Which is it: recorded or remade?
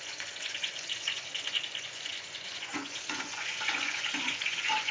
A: remade